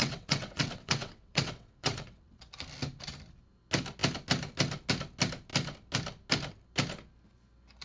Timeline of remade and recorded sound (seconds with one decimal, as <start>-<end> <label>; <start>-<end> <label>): 0.0-2.4 remade; 2.4-7.8 recorded